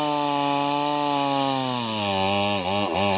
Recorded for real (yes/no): yes